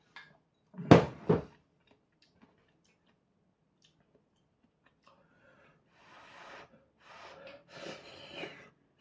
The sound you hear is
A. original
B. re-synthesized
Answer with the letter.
A